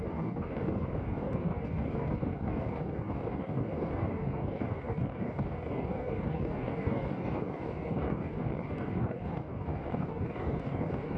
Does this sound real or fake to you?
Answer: fake